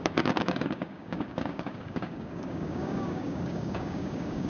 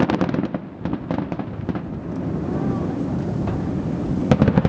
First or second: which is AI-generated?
first